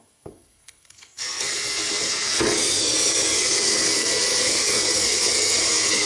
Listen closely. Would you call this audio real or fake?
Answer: fake